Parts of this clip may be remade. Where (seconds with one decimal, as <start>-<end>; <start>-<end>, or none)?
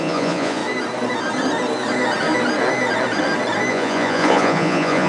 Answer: 0.0-0.6; 3.7-5.1